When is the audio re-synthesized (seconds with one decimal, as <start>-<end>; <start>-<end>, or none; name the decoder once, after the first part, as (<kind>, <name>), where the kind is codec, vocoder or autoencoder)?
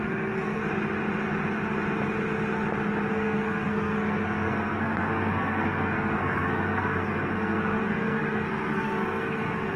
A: 0.0-0.6 (codec, SNAC); 3.1-9.8